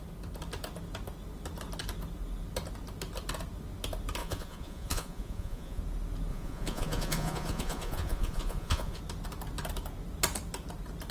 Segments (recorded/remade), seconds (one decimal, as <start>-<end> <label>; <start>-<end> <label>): 0.0-4.2 recorded; 4.2-5.8 remade; 5.8-6.3 recorded; 6.3-9.0 remade; 9.0-11.1 recorded

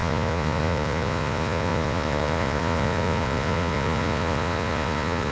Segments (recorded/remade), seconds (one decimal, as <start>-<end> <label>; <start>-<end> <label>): 0.0-5.3 remade

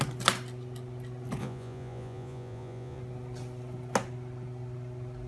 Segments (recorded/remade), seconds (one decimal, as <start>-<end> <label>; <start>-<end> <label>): 0.0-1.4 recorded; 1.4-3.0 remade; 3.0-5.3 recorded

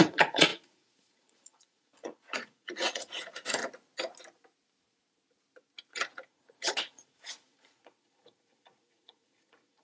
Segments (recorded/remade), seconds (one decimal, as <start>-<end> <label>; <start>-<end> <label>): 0.0-3.6 remade; 3.6-5.9 recorded; 5.9-9.8 remade

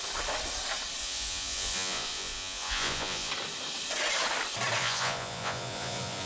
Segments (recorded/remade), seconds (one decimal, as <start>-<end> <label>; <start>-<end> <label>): 0.0-1.0 recorded; 1.0-3.3 remade; 3.3-4.8 recorded; 4.8-6.3 remade

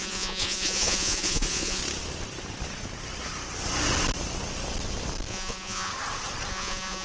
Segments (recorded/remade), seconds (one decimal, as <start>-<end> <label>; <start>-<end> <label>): 0.0-1.8 remade; 1.8-5.3 recorded; 5.3-5.9 remade; 5.9-6.5 recorded; 6.5-7.0 remade

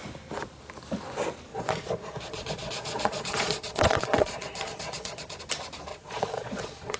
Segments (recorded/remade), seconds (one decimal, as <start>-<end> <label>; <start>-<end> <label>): 0.0-1.5 recorded; 1.5-5.4 remade; 5.4-5.9 recorded; 5.9-7.0 remade